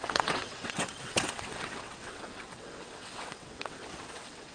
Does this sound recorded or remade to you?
remade